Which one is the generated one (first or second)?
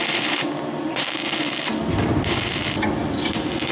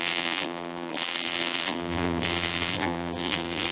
second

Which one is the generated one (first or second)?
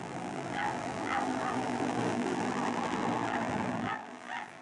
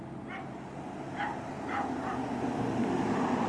first